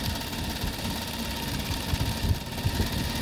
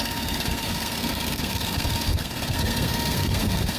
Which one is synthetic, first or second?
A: second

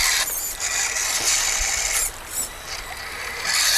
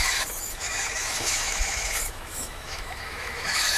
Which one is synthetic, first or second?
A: second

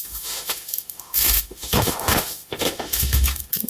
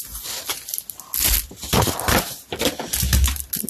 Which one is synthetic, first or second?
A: first